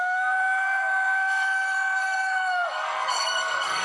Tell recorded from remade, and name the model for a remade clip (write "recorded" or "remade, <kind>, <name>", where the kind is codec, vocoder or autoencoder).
remade, codec, SNAC